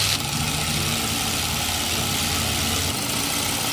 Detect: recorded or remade recorded